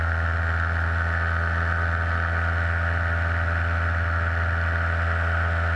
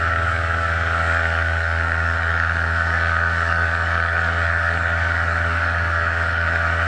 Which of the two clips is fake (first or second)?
second